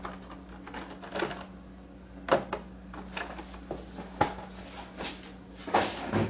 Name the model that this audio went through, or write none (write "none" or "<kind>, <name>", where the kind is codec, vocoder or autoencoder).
none